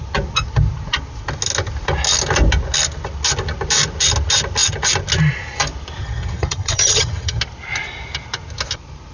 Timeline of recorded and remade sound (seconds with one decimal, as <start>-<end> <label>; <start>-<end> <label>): 0.0-6.0 recorded; 6.0-7.4 remade; 7.4-9.1 recorded